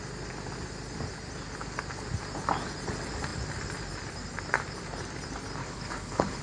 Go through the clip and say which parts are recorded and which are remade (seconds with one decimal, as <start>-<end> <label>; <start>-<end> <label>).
0.0-5.6 recorded; 5.6-6.4 remade